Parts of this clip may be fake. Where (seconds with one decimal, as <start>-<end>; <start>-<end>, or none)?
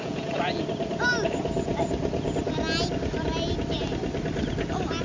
0.0-0.6